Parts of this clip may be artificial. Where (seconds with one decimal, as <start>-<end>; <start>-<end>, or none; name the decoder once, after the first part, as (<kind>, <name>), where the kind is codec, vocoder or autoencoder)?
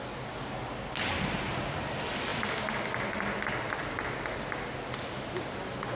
none